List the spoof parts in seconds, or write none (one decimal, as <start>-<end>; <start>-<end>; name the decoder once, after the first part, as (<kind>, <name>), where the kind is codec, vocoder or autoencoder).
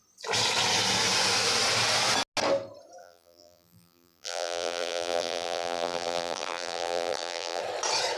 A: 3.0-7.6 (vocoder, BigVGAN v2)